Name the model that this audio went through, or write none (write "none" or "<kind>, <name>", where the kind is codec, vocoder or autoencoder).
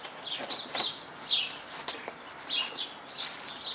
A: none